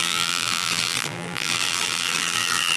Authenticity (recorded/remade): remade